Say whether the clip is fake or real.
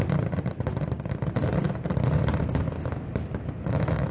real